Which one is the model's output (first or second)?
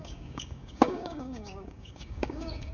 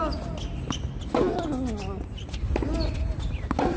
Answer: first